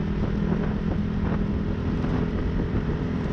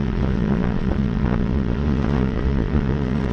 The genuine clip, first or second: first